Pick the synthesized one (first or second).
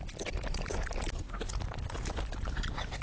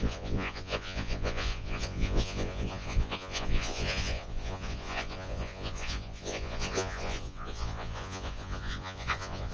second